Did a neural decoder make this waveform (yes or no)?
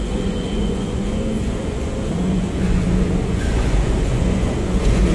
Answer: yes